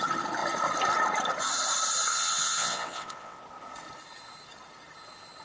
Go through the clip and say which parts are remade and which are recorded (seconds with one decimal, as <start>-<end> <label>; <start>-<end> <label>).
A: 0.0-2.1 recorded; 2.1-3.4 remade; 3.4-5.4 recorded